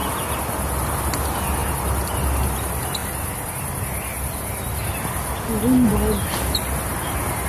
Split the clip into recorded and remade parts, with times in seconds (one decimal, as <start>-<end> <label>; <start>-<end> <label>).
0.0-1.0 remade; 1.0-1.6 recorded; 1.6-2.5 remade; 2.5-7.5 recorded